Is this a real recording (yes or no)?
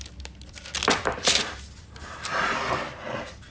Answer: yes